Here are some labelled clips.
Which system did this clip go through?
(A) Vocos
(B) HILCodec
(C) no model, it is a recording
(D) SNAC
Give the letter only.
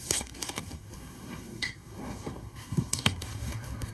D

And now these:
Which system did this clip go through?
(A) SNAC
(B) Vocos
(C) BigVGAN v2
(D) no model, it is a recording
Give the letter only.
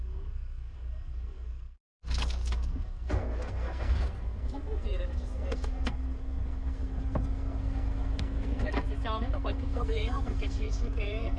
A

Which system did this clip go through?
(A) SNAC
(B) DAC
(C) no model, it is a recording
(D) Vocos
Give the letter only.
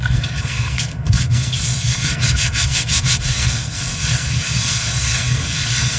A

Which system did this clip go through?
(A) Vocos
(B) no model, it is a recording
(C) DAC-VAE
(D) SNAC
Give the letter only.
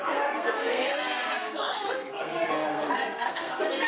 D